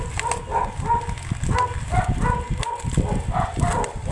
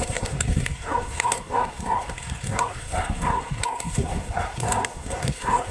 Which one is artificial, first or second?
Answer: second